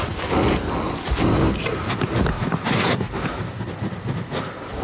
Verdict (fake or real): real